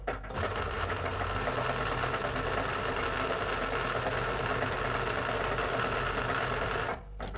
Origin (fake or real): real